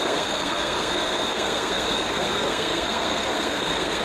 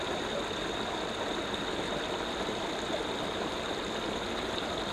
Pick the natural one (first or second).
second